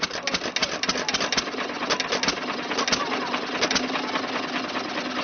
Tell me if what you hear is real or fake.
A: real